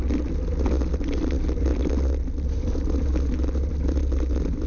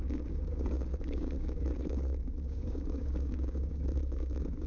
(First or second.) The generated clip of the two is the second